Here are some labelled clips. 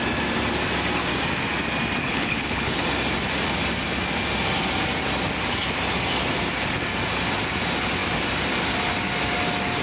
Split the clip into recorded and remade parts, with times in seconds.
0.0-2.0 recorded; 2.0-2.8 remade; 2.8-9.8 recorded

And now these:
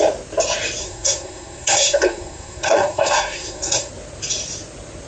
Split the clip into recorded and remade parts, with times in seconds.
0.0-0.8 recorded; 0.8-3.9 remade; 3.9-5.1 recorded

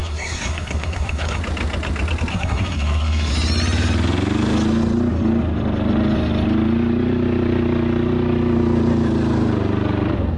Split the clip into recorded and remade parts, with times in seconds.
0.0-1.4 remade; 1.4-2.3 recorded; 2.3-3.3 remade; 3.3-10.4 recorded

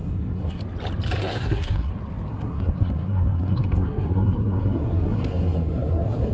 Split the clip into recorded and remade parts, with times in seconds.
0.0-0.6 remade; 0.6-1.2 recorded; 1.2-1.9 remade; 1.9-2.3 recorded; 2.3-6.3 remade

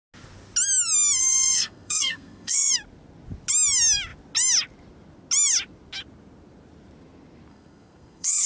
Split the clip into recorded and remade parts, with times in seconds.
0.0-1.2 recorded; 1.2-2.7 remade; 2.7-7.5 recorded; 7.5-8.5 remade

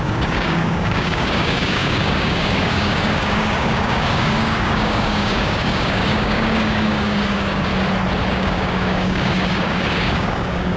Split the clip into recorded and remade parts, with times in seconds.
0.0-7.7 remade; 7.7-8.3 recorded; 8.3-10.8 remade